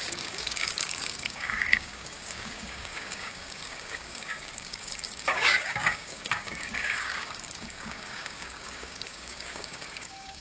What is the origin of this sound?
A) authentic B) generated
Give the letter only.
B